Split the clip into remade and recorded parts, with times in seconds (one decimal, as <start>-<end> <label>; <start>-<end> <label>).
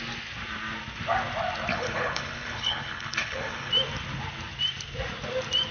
0.0-1.7 recorded; 1.7-3.7 remade; 3.7-5.7 recorded